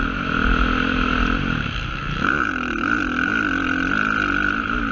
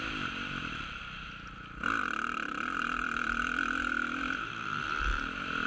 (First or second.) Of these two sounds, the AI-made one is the second